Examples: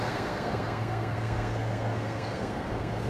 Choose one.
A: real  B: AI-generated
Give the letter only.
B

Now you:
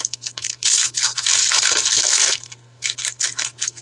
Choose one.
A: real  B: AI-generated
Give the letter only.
B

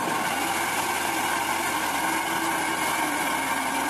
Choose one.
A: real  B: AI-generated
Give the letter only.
A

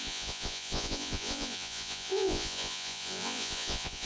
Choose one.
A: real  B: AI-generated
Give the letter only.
B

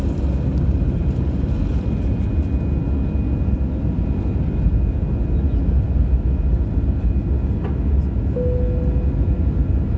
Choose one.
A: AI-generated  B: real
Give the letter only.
B